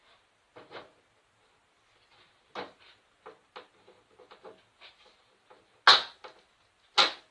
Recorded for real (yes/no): yes